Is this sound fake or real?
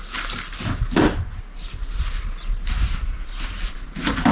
real